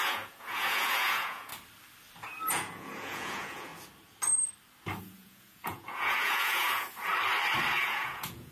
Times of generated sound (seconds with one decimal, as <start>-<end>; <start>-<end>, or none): 0.0-1.5; 2.5-3.7; 5.0-7.1; 7.7-8.5